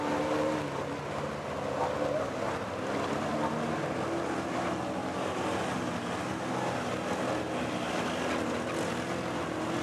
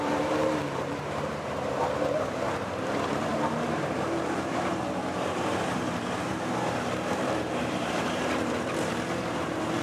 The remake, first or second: second